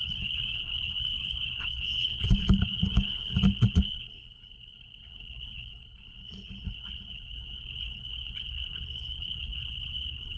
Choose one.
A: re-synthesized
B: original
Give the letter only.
A